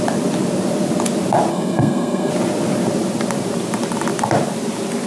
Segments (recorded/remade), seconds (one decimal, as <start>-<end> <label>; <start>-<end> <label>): 0.0-1.5 recorded; 1.5-2.3 remade; 2.3-5.1 recorded